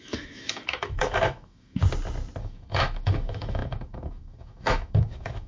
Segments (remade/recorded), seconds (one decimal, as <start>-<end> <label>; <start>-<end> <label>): 0.0-1.8 remade; 1.8-2.4 recorded; 2.4-5.5 remade